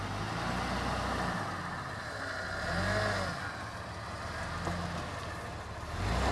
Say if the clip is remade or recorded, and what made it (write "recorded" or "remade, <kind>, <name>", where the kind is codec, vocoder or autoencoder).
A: recorded